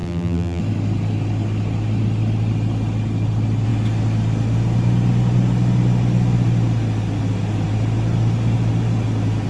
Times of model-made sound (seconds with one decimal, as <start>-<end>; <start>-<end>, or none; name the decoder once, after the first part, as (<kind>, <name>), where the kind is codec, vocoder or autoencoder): 0.0-0.6 (vocoder, BigVGAN v2)